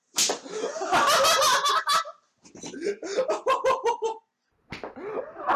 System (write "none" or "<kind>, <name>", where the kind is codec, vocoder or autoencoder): none